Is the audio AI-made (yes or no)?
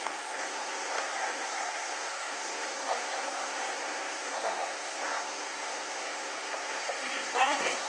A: yes